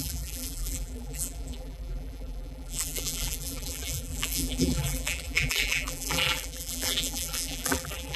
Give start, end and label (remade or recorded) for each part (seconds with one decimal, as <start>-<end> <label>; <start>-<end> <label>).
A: 0.0-8.2 remade